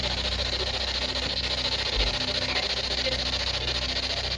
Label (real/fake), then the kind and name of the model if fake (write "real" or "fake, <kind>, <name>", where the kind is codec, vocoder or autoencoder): real